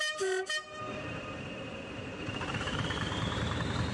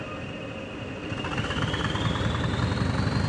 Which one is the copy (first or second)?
first